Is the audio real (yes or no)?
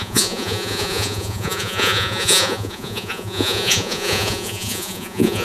no